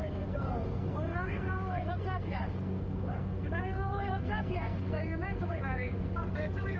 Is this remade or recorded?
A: remade